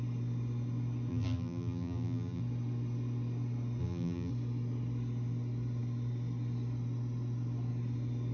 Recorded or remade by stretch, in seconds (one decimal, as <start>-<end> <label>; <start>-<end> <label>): 0.0-1.1 recorded; 1.1-2.4 remade; 2.4-3.8 recorded; 3.8-4.3 remade; 4.3-8.3 recorded